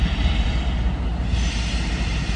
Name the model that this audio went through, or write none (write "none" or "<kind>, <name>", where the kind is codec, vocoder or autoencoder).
vocoder, BigVGAN v2